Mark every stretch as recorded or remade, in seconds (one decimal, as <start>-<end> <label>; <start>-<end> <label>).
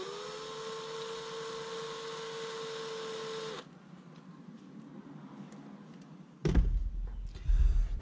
0.0-6.4 recorded; 6.4-6.9 remade; 6.9-8.0 recorded